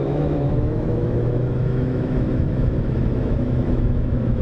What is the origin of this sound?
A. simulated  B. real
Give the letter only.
A